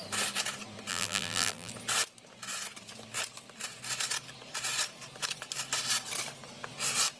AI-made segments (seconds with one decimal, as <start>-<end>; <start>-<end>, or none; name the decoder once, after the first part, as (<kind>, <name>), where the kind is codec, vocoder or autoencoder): 0.9-1.7 (vocoder, BigVGAN v2)